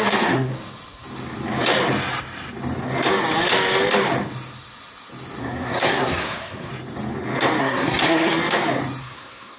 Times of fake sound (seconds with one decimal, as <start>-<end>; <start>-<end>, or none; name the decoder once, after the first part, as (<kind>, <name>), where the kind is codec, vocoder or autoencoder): 0.0-0.5 (codec, SNAC); 5.4-6.7; 7.6-8.3; 9.0-9.6